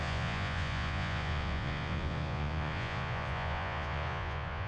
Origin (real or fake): fake